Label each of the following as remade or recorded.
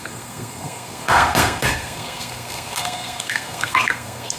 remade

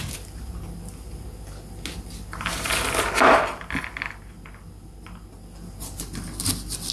recorded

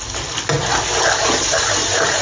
recorded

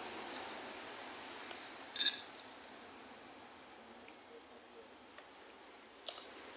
recorded